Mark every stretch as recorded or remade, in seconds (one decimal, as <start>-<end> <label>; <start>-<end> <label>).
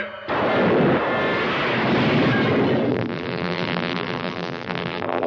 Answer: 0.0-2.9 recorded; 2.9-5.3 remade